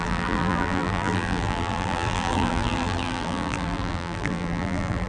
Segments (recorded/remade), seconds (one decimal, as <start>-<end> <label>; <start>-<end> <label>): 0.0-5.1 remade